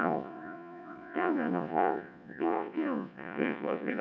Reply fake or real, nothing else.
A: fake